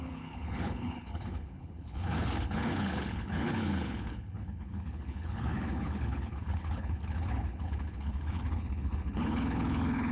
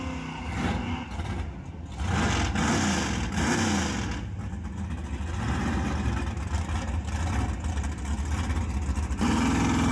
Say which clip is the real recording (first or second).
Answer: second